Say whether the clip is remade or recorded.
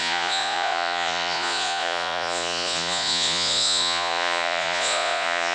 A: remade